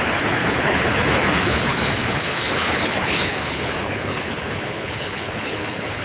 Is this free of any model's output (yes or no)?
no